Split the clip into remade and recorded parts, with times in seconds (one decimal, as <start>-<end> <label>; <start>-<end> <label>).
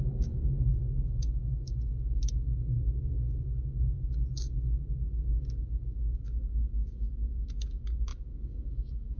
0.0-9.2 remade